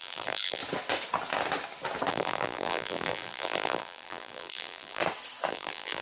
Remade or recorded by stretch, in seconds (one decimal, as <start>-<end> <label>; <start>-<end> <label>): 0.0-0.6 remade; 0.6-2.1 recorded; 2.1-5.0 remade; 5.0-5.5 recorded; 5.5-6.0 remade